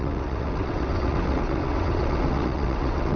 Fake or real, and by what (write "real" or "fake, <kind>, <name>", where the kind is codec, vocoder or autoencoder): fake, vocoder, WaveNeXt